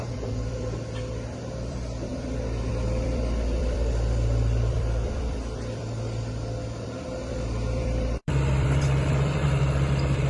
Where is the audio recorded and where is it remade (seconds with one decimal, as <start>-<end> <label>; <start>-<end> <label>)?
0.0-10.3 remade